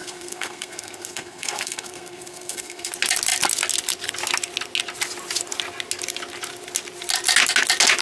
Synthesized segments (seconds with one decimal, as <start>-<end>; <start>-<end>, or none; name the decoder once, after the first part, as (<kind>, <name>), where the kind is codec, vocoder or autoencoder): 0.0-2.9 (codec, SNAC)